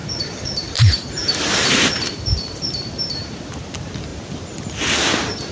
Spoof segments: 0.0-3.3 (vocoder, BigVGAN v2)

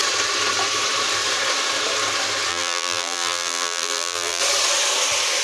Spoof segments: 2.5-4.4 (vocoder, BigVGAN v2)

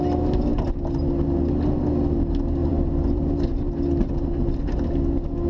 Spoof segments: 2.6-3.3 (vocoder, BigVGAN v2)